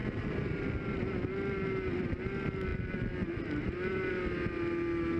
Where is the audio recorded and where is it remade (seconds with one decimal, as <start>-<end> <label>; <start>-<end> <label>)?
0.0-5.2 recorded